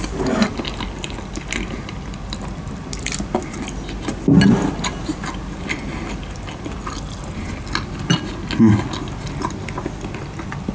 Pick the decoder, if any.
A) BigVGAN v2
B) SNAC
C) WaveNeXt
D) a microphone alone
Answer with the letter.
D